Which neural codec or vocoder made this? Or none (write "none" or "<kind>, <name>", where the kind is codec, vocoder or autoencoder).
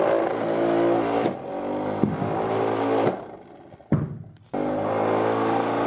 none